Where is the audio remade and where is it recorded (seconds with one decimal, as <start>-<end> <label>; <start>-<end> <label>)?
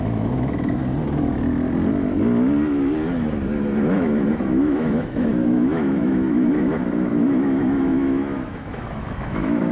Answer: 0.0-0.8 remade; 0.8-4.3 recorded; 4.3-9.7 remade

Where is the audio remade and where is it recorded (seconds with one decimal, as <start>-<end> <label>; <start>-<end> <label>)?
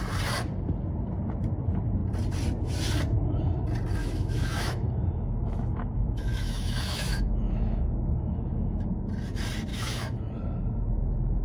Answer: 0.0-4.0 recorded; 4.0-8.9 remade; 8.9-9.7 recorded; 9.7-10.3 remade; 10.3-11.4 recorded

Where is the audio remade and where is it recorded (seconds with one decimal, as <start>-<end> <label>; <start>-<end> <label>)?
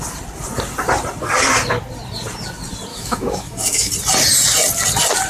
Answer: 0.0-2.9 recorded; 2.9-3.9 remade; 3.9-5.3 recorded